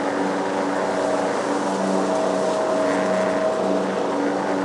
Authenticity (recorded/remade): recorded